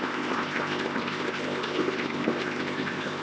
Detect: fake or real fake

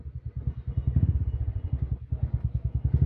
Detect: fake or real real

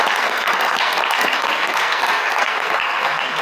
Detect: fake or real fake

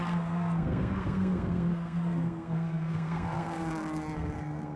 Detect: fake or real fake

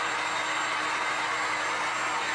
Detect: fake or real real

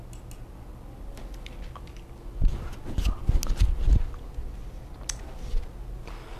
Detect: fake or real real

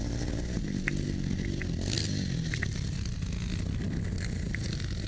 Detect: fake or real real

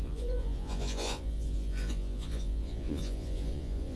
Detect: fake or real fake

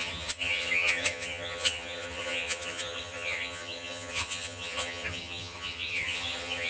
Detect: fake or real fake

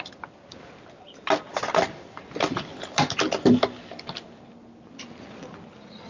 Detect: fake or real real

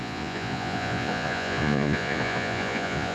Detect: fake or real fake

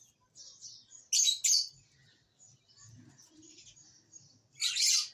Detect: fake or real real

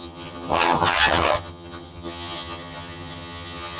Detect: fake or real fake